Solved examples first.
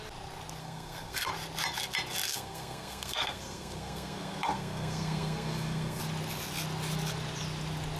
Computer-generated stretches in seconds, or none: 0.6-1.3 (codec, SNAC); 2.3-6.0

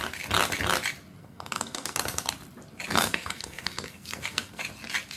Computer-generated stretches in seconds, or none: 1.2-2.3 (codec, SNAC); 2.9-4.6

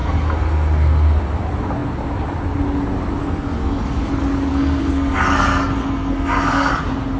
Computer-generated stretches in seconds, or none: 0.0-1.2 (codec, SNAC); 3.2-4.1; 4.5-6.7

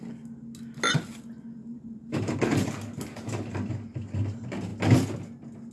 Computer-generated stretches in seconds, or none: 1.7-3.7 (vocoder, BigVGAN v2)